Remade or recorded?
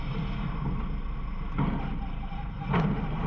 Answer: recorded